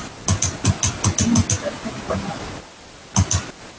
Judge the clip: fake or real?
real